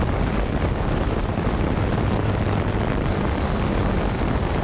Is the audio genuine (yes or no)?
yes